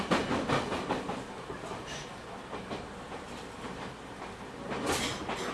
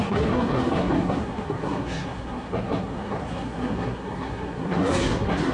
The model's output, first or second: second